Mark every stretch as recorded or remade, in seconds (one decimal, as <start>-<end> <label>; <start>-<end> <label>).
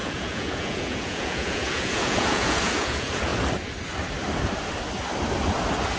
0.0-3.3 remade; 3.3-6.0 recorded